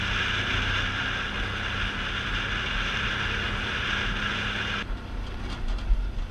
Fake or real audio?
real